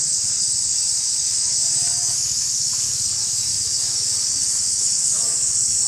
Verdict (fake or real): fake